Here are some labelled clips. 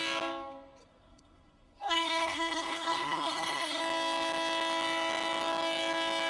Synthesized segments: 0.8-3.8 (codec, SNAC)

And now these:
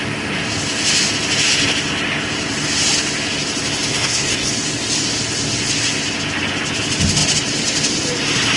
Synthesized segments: 3.9-4.5 (codec, SNAC)

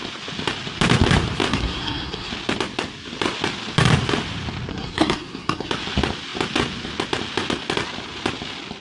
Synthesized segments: 1.5-2.3 (codec, SNAC); 4.7-5.7